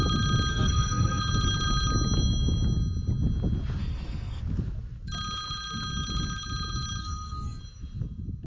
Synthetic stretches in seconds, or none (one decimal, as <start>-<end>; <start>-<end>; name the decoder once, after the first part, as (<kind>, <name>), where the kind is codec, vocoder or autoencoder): 0.5-1.2 (codec, SNAC); 3.8-4.4; 7.0-7.6